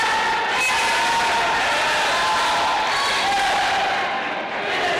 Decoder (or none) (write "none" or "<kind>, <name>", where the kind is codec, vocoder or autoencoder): none